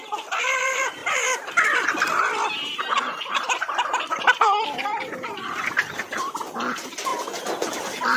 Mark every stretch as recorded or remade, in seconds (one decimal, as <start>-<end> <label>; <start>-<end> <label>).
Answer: 0.0-7.1 remade; 7.1-7.7 recorded; 7.7-8.2 remade